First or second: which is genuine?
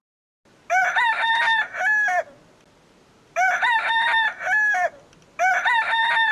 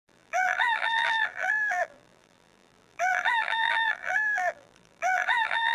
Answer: first